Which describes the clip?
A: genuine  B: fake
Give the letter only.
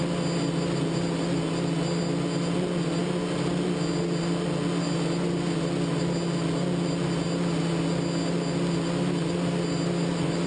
A